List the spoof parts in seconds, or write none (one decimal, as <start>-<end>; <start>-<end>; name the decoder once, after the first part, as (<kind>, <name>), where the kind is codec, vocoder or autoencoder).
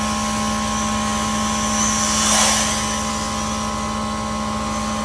none